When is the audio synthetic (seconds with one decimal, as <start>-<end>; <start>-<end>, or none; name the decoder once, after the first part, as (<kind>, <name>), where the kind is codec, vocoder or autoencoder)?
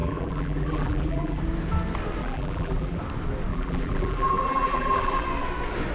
0.0-1.4 (vocoder, BigVGAN v2); 2.2-3.0; 3.5-5.2